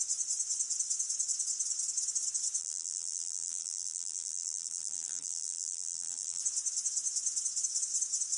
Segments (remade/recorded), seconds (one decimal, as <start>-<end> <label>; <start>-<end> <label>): 0.0-2.6 recorded; 2.6-6.4 remade; 6.4-8.4 recorded